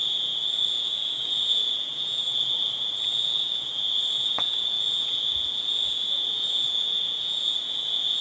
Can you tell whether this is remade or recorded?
remade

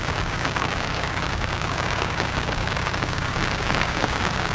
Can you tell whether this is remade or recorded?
remade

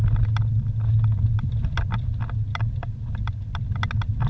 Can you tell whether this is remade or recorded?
recorded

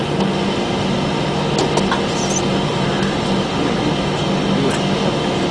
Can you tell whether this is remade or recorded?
recorded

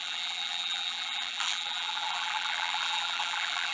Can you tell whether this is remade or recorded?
remade